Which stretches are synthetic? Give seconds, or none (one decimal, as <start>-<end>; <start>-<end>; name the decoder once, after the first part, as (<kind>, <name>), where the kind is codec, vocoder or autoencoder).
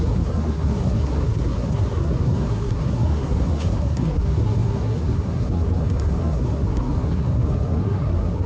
0.0-8.5 (codec, SNAC)